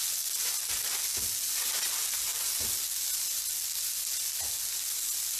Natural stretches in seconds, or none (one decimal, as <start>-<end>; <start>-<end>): 0.0-5.4